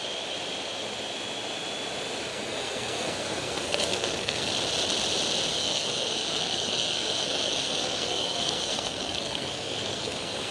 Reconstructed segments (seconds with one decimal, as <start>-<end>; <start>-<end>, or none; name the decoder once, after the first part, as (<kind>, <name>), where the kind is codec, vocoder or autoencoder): 2.3-4.5 (codec, SNAC); 5.5-10.5